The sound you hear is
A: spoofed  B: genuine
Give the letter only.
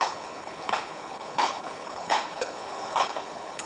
A